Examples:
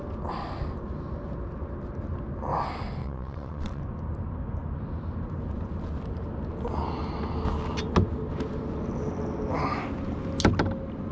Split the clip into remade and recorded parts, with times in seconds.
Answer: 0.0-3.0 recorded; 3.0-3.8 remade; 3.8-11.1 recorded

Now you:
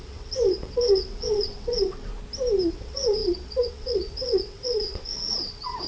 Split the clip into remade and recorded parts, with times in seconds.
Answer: 0.0-2.1 remade; 2.1-2.7 recorded; 2.7-5.9 remade

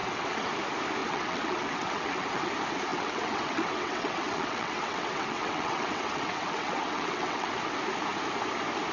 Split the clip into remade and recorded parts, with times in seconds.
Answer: 0.0-0.5 remade; 0.5-1.0 recorded; 1.0-2.5 remade; 2.5-2.9 recorded; 2.9-7.6 remade; 7.6-8.9 recorded